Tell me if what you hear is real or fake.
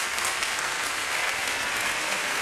fake